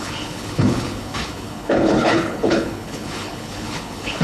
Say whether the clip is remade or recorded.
remade